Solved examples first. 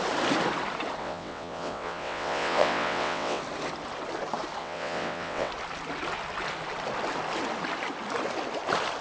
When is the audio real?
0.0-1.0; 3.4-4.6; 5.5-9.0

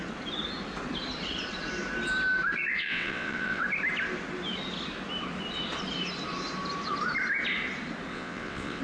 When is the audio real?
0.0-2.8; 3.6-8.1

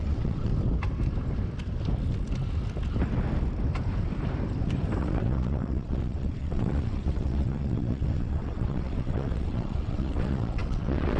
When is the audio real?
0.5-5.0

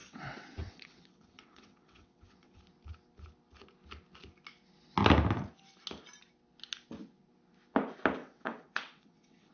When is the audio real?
2.6-8.2

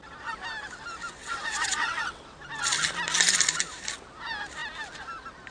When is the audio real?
0.0-1.2; 2.2-5.5

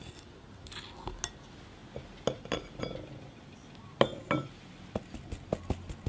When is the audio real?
0.0-6.1

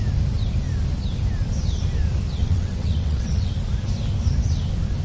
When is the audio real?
0.0-2.4; 3.5-5.0